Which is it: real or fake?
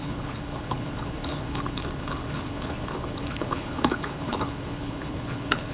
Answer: fake